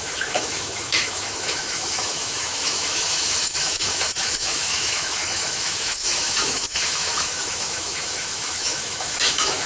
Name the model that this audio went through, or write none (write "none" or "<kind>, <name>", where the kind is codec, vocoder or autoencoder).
autoencoder, DAC-VAE